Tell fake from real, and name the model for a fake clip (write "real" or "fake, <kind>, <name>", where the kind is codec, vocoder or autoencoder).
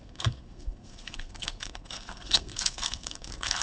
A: fake, codec, SNAC